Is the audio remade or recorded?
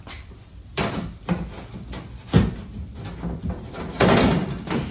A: remade